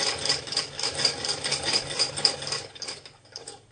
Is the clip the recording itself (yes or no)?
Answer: no